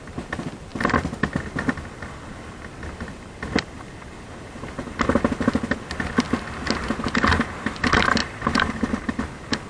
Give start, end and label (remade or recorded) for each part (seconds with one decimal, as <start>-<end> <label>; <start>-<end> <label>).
0.0-8.2 recorded; 8.2-9.1 remade; 9.1-9.7 recorded